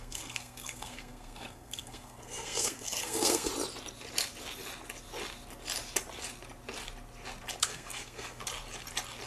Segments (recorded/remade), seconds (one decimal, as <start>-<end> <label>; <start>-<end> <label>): 0.0-3.5 remade; 3.5-7.6 recorded; 7.6-8.4 remade; 8.4-9.3 recorded